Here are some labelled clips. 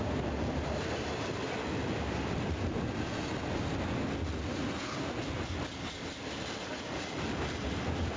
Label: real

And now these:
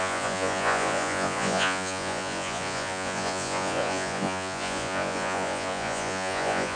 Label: fake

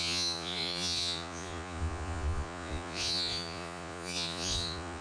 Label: fake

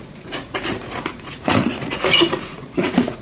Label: fake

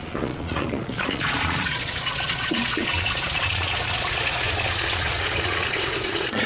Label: fake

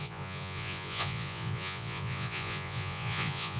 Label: fake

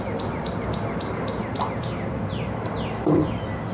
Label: real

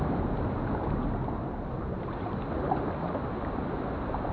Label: real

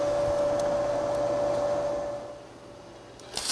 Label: real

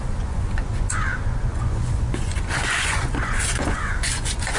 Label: fake